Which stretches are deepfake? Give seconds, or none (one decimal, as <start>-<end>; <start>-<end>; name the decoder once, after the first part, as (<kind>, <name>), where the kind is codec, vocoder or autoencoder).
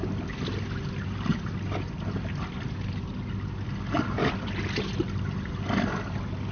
none